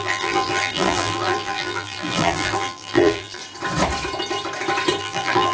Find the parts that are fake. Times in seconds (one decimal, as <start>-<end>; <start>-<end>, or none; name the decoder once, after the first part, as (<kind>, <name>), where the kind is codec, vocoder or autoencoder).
0.0-3.4 (vocoder, BigVGAN v2); 5.0-5.5